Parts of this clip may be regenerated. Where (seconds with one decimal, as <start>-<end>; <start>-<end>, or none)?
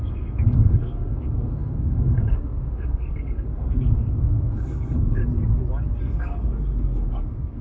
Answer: 0.0-5.2; 6.0-7.6